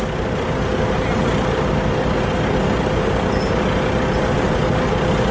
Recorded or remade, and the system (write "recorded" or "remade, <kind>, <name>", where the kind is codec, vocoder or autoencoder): recorded